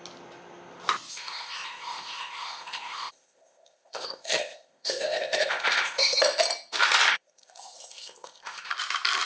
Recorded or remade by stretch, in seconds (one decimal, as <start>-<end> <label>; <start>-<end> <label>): 0.0-1.1 recorded; 1.1-6.2 remade; 6.2-7.1 recorded; 7.1-8.7 remade; 8.7-9.3 recorded